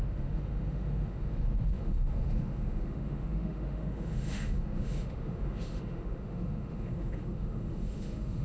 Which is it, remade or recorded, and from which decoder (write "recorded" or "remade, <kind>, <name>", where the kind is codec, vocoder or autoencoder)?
remade, autoencoder, DAC-VAE